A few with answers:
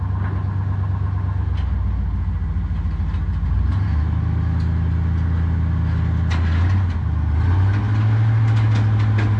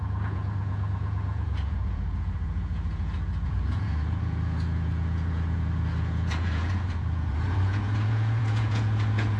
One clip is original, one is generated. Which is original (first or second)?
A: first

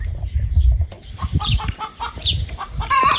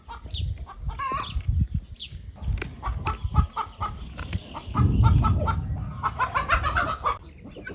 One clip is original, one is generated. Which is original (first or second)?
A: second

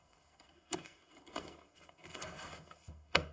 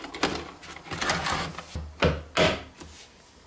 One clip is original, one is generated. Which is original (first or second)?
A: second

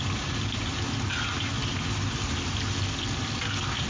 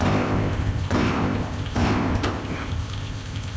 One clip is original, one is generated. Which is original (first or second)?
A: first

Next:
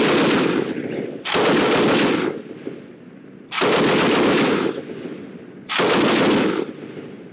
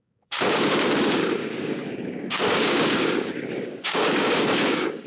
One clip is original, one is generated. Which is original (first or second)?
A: first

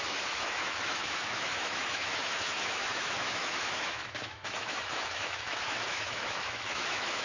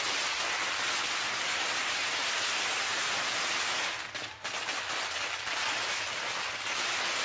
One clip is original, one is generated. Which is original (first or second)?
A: second